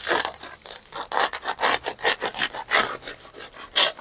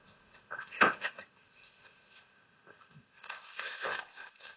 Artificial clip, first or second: second